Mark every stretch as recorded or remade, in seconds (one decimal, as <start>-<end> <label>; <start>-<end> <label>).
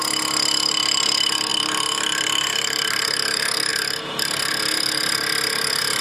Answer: 0.0-0.7 recorded; 0.7-6.0 remade